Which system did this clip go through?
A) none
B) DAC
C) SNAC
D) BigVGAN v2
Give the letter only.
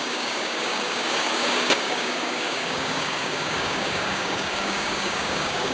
B